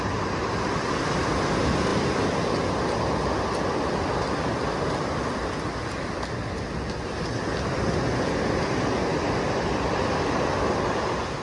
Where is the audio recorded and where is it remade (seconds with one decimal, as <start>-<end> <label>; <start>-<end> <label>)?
0.0-11.4 recorded